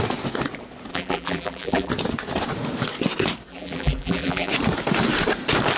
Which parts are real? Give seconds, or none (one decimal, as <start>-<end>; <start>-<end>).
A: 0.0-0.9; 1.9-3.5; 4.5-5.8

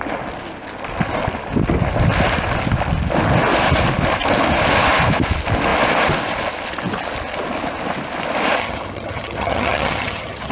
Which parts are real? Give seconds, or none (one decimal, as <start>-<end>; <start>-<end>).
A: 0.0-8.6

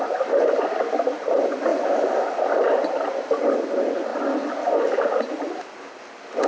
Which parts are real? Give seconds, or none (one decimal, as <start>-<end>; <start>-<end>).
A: 0.0-6.5

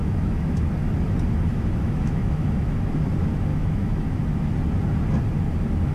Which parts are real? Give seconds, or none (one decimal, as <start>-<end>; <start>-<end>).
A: 0.7-1.5; 3.0-3.5; 4.2-5.9

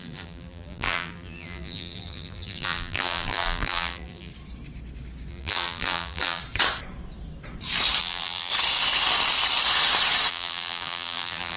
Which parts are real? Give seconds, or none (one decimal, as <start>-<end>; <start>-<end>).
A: 4.3-5.3; 6.4-8.0; 8.5-10.3